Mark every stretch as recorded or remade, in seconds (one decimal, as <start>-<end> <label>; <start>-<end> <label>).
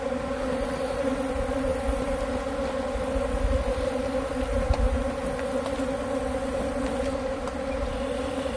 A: 0.0-8.6 recorded